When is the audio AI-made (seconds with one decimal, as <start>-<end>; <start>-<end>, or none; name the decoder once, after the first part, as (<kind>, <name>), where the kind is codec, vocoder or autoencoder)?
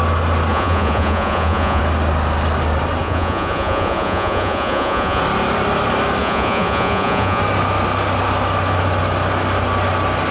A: 0.5-1.8 (vocoder, Vocos); 3.0-5.2; 6.2-7.4